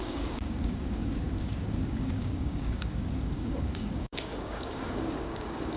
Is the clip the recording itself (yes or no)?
no